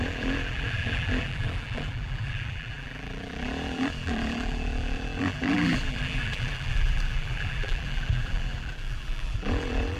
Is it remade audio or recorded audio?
remade